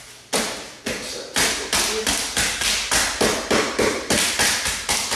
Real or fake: real